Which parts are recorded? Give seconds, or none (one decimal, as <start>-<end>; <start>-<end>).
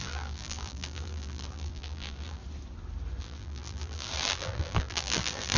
2.4-3.2